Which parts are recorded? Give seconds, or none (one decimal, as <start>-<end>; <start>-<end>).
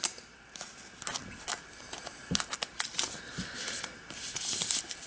0.0-5.1